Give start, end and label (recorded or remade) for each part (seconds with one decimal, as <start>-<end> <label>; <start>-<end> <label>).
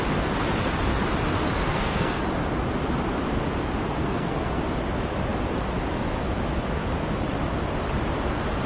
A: 0.0-1.7 recorded; 1.7-2.2 remade; 2.2-4.0 recorded; 4.0-4.6 remade; 4.6-8.7 recorded